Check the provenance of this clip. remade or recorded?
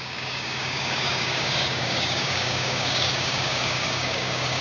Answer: remade